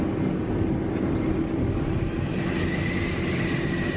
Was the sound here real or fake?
real